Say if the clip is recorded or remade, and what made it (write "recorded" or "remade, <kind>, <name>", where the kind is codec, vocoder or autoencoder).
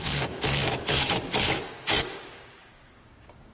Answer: remade, codec, DAC